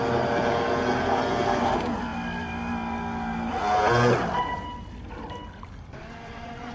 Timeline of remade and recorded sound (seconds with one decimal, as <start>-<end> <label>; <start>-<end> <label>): 0.0-6.7 recorded